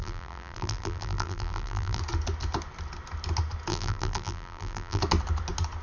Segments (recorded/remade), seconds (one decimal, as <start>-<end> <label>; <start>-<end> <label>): 0.0-2.0 remade; 2.0-3.7 recorded; 3.7-5.0 remade; 5.0-5.8 recorded